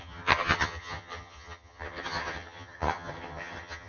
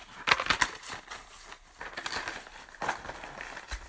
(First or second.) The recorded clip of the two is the second